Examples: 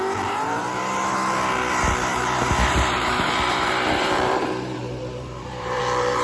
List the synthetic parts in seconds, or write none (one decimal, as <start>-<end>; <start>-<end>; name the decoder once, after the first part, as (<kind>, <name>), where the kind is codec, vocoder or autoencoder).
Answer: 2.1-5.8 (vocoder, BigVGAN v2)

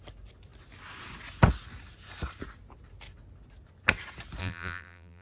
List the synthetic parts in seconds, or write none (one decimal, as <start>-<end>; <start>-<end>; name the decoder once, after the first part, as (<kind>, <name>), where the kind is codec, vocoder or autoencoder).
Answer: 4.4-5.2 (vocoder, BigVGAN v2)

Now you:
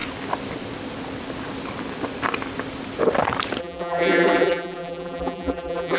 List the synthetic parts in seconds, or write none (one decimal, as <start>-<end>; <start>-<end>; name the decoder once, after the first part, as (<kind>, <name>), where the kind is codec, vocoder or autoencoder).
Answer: 3.6-6.0 (vocoder, BigVGAN v2)

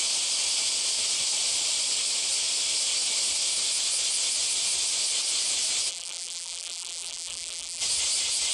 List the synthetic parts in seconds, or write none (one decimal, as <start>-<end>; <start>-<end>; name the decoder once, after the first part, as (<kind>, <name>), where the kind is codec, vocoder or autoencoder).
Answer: 5.9-7.8 (vocoder, BigVGAN v2)